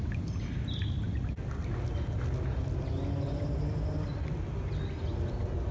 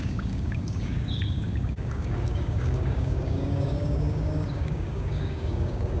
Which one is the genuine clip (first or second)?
first